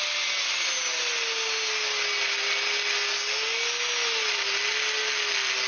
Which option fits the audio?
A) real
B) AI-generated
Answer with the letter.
A